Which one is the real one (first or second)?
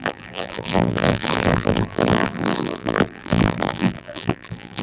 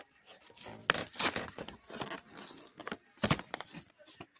second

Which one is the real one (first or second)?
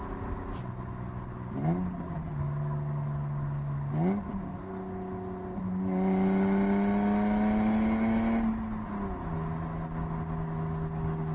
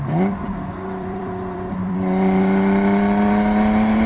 first